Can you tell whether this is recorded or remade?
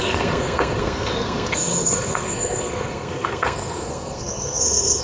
remade